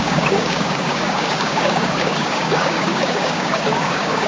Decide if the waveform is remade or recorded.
remade